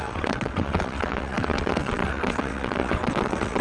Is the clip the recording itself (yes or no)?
no